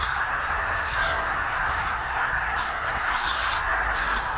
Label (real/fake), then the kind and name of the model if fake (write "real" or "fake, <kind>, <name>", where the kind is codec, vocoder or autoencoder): fake, codec, SNAC